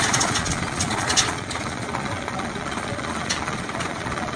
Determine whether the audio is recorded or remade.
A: remade